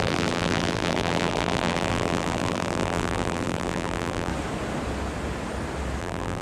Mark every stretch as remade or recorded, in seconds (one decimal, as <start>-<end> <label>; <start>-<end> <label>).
0.0-4.3 remade; 4.3-6.0 recorded; 6.0-6.4 remade